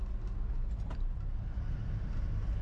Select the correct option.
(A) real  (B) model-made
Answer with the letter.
A